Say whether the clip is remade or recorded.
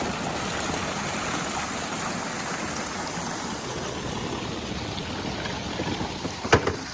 recorded